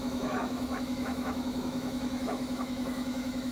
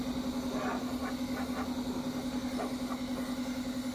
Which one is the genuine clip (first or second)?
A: second